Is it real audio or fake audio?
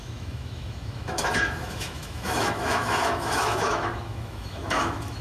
fake